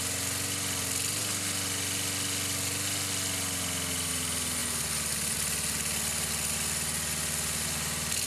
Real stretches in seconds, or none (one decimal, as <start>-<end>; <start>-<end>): 0.0-8.3